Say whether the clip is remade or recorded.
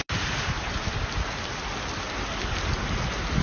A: recorded